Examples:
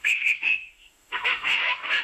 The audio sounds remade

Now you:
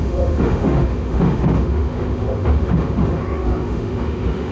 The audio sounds remade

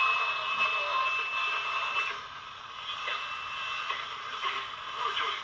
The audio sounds recorded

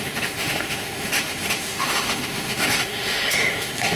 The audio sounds remade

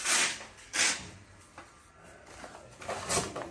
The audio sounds recorded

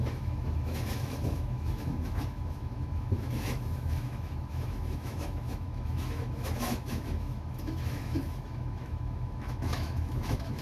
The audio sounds remade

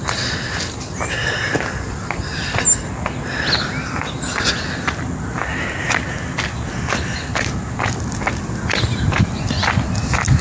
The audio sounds recorded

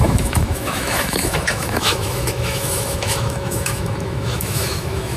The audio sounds remade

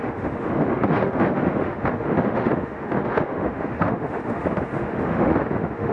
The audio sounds remade